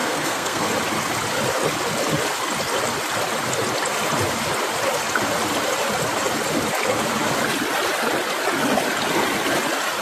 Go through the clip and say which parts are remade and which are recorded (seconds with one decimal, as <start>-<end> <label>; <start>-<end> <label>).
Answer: 0.0-0.7 remade; 0.7-10.0 recorded